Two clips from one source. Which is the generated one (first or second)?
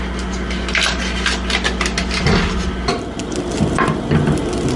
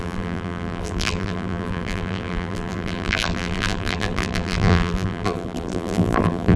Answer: second